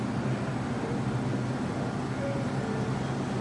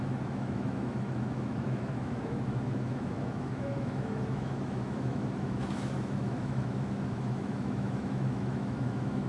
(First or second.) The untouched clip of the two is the first